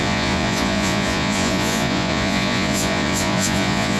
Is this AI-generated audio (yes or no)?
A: yes